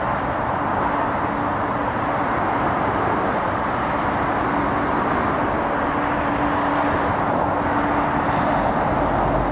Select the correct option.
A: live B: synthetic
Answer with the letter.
A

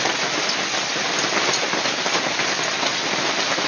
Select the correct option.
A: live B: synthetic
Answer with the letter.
A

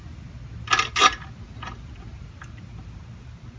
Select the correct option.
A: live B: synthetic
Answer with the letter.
A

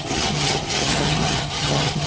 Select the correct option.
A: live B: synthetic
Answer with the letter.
B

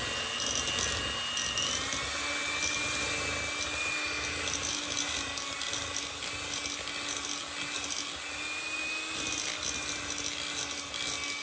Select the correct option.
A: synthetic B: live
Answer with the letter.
B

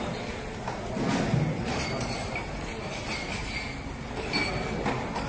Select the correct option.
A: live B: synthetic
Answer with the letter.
A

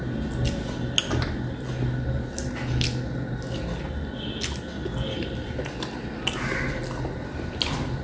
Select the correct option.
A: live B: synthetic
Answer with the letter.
A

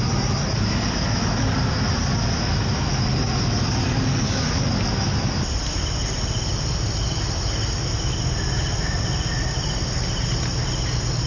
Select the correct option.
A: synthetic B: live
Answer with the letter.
B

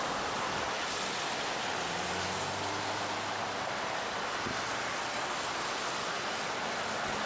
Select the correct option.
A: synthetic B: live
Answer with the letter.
B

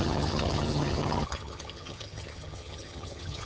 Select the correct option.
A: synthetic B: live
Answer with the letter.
A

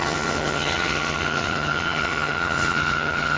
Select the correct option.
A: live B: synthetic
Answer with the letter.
B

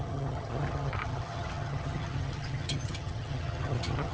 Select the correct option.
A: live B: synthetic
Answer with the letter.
B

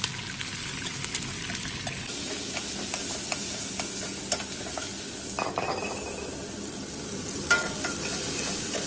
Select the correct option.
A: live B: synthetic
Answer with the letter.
A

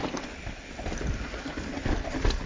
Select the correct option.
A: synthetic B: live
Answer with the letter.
B